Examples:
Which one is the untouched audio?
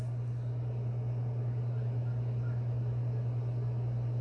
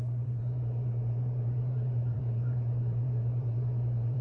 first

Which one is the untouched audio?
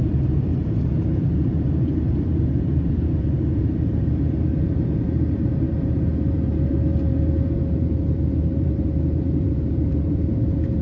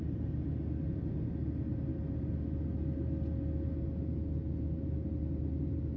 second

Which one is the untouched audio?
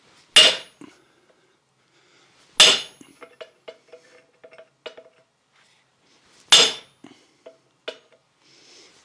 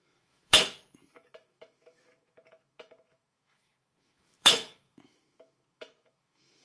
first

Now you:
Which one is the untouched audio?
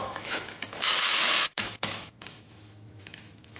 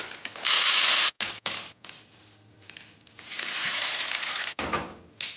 second